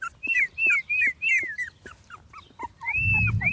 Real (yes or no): yes